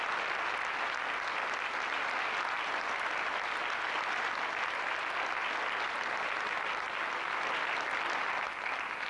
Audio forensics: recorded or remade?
recorded